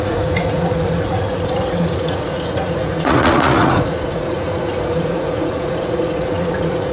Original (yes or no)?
no